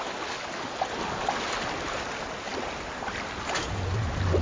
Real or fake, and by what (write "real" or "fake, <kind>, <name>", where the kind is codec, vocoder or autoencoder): real